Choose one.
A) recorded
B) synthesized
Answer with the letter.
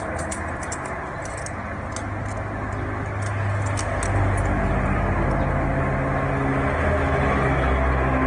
A